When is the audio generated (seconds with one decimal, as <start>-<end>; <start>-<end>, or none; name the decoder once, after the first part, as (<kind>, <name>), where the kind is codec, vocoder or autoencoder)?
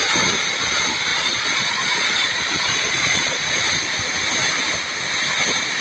1.1-3.6 (vocoder, Vocos)